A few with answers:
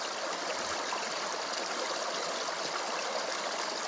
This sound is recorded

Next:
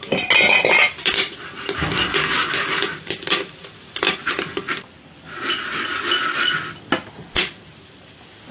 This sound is recorded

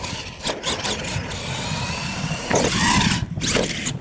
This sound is recorded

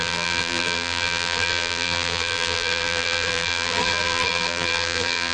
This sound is remade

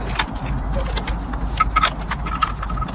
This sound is recorded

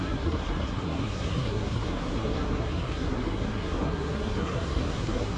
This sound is remade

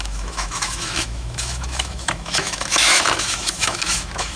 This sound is remade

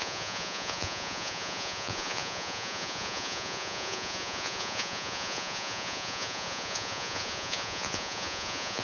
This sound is remade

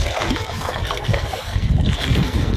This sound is remade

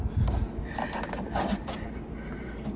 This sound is recorded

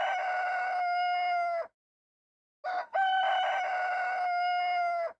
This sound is recorded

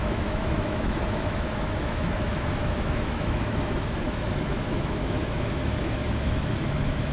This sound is remade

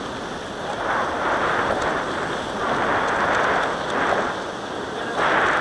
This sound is recorded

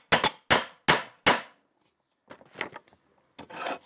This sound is recorded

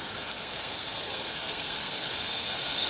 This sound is remade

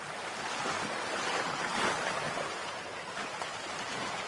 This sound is recorded